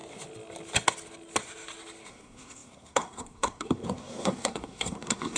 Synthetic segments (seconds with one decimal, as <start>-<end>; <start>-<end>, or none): 2.1-5.4